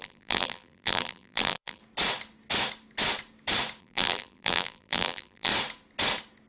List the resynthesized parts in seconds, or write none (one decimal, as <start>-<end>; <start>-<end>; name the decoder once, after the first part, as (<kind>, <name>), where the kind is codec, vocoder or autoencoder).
0.0-1.8 (vocoder, BigVGAN v2); 3.8-5.5